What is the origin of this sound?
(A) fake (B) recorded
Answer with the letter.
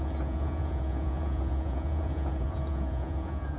A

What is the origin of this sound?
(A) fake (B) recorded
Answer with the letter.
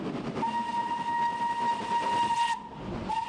B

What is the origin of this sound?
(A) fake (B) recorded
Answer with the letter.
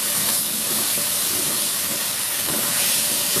A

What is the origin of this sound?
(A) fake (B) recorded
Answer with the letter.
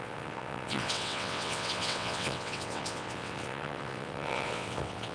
A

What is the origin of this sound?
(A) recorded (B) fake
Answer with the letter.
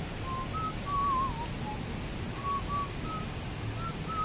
A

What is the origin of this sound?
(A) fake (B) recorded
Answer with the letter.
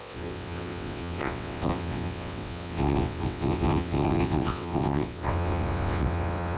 A